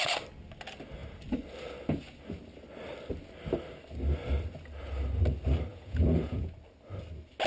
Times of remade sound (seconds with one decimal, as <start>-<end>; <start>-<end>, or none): 5.7-6.5